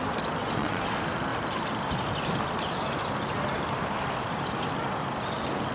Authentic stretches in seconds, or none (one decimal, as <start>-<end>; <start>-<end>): 0.0-0.4; 0.9-5.7